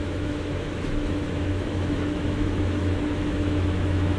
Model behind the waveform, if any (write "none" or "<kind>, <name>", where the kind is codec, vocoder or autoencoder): autoencoder, DAC-VAE